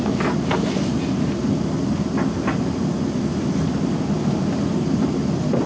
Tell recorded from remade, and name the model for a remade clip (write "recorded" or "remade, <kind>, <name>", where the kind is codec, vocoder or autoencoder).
recorded